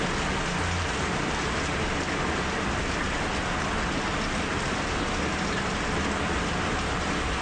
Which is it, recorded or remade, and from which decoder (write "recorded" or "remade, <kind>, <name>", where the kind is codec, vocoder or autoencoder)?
recorded